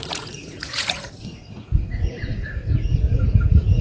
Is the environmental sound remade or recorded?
remade